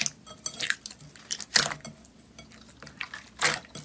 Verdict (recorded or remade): recorded